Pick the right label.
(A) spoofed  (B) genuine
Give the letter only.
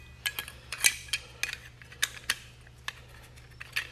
B